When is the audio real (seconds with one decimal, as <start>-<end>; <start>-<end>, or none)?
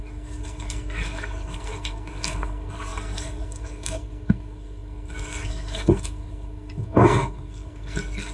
none